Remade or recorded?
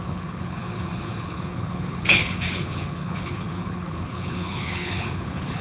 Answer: remade